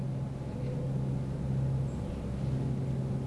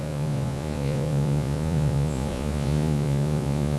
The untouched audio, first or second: first